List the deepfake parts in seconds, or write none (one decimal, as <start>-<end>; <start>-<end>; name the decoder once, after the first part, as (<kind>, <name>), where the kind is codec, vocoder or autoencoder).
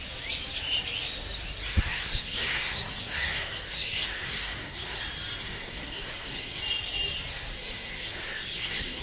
1.7-5.0 (codec, SNAC); 5.4-6.6; 7.5-9.0